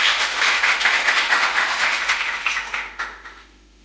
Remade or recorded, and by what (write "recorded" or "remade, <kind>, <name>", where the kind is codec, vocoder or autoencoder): remade, autoencoder, DAC-VAE